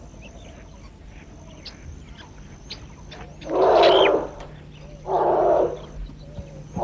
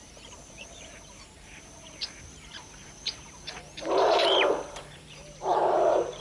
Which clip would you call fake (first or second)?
second